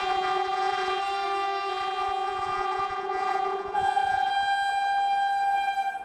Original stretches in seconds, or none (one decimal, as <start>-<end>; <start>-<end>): 1.0-1.7; 4.3-6.0